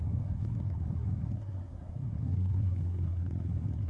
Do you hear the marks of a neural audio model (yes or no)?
yes